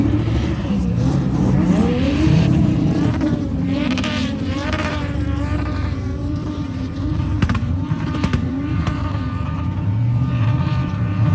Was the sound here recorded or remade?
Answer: remade